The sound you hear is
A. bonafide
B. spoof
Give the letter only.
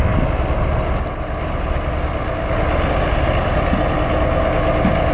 A